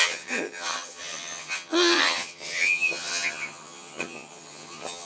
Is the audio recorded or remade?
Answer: remade